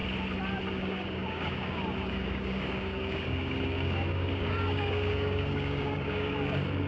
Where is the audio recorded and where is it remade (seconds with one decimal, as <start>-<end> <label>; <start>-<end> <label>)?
0.0-0.7 recorded; 0.7-6.9 remade